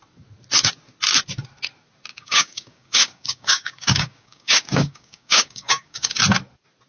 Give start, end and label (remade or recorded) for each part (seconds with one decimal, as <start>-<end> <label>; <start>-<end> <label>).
0.0-2.1 recorded; 2.1-6.2 remade; 6.2-6.9 recorded